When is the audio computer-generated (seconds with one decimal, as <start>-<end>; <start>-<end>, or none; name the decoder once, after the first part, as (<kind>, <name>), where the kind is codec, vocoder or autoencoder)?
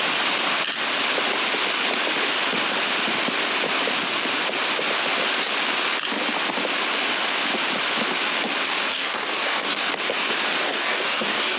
8.9-9.9 (codec, DAC); 10.6-11.6